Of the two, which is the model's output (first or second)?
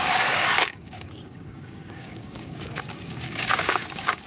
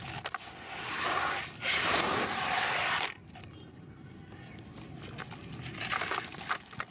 first